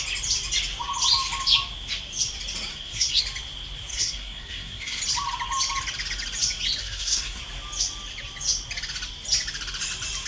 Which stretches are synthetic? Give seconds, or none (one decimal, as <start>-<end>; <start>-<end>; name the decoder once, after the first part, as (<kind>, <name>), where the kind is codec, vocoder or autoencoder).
2.7-3.2 (codec, SNAC); 3.9-5.0; 6.8-7.4